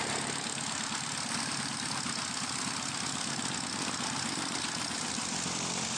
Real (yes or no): yes